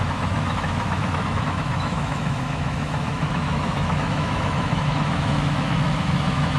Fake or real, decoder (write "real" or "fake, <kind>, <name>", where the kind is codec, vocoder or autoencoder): fake, autoencoder, DAC-VAE